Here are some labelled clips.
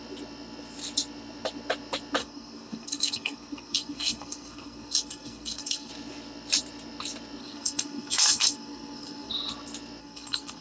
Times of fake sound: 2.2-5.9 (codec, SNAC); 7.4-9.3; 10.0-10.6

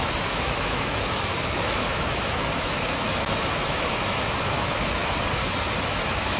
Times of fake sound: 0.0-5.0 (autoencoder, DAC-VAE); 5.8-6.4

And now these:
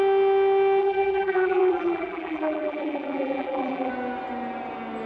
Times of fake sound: 0.8-3.9 (vocoder, BigVGAN v2)

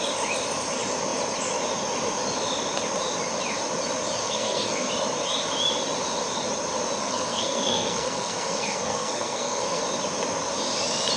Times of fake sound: 4.2-4.9 (codec, SNAC); 7.0-9.8

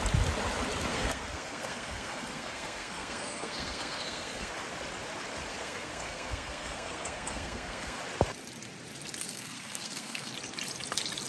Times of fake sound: 0.9-4.5 (codec, SNAC); 5.5-8.0; 9.2-10.3

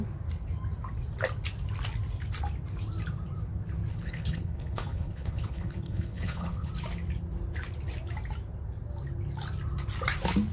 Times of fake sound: 3.9-6.7 (codec, HILCodec)